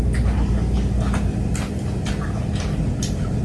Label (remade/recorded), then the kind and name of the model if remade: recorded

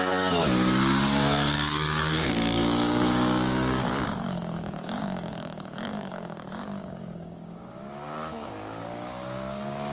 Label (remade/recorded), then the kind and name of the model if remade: remade, codec, DAC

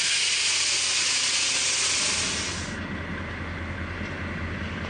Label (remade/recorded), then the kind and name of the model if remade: recorded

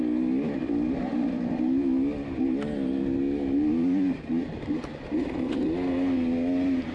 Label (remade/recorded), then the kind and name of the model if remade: recorded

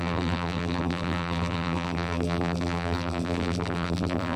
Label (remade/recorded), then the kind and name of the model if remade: remade, vocoder, BigVGAN v2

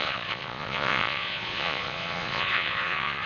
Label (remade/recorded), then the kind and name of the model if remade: remade, vocoder, Vocos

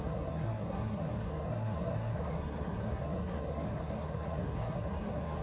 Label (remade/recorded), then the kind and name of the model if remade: remade, codec, SNAC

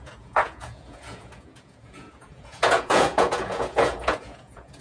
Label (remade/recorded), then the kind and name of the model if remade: remade, vocoder, Vocos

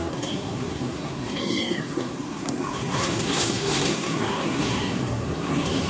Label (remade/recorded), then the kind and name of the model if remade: remade, codec, SNAC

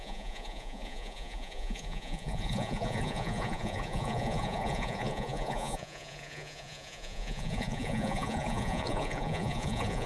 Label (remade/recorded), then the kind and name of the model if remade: remade, vocoder, Vocos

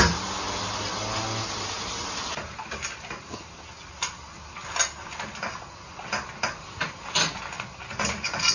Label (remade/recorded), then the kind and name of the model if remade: recorded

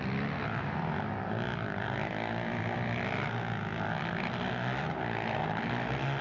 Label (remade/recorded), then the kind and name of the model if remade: recorded